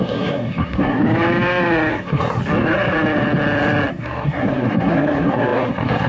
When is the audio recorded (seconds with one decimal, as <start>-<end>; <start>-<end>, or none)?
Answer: 1.0-1.9; 2.4-3.9